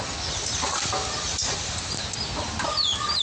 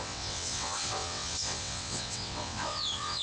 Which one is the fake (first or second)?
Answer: second